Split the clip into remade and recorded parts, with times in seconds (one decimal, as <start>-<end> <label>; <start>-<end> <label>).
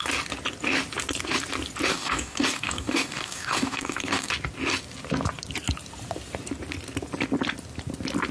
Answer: 0.0-1.9 recorded; 1.9-4.3 remade; 4.3-8.3 recorded